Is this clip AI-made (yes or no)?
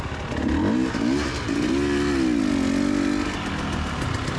no